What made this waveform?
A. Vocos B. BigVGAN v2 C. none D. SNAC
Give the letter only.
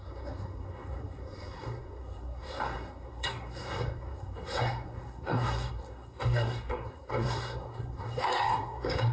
D